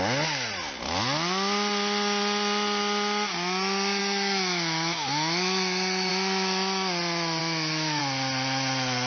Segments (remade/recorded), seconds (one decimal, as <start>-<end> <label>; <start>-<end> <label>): 0.0-4.0 recorded; 4.0-6.1 remade; 6.1-7.4 recorded; 7.4-8.0 remade; 8.0-9.1 recorded